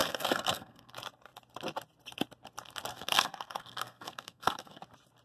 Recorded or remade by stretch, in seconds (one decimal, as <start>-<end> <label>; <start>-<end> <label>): 0.0-0.9 remade; 0.9-2.9 recorded; 2.9-4.8 remade; 4.8-5.2 recorded